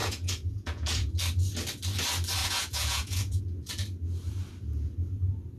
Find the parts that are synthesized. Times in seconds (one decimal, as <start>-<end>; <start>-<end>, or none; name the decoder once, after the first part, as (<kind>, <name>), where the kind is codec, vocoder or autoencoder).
0.0-1.1 (vocoder, Vocos); 2.4-3.4